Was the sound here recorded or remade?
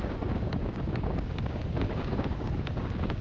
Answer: remade